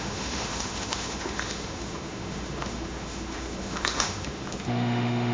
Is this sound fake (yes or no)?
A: yes